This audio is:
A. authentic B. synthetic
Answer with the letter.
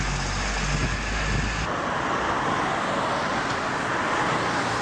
A